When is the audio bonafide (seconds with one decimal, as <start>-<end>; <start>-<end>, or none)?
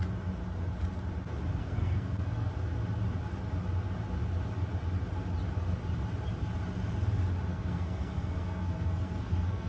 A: 0.0-1.6; 2.5-7.5